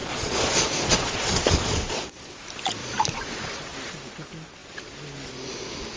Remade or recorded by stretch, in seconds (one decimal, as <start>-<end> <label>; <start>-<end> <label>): 0.0-2.4 remade; 2.4-2.8 recorded; 2.8-3.6 remade; 3.6-6.0 recorded